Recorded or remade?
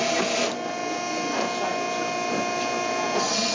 recorded